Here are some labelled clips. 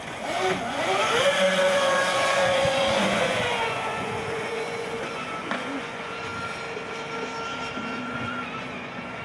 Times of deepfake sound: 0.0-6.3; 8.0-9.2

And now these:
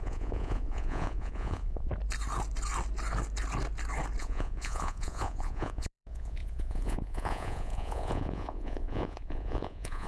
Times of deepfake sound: 0.0-1.9; 4.2-10.1

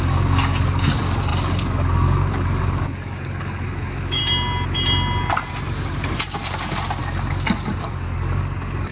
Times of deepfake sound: 0.0-4.2; 7.0-8.9

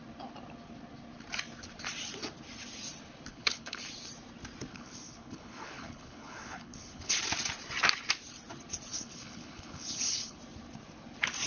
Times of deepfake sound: 3.3-3.8; 4.7-7.2; 8.9-10.4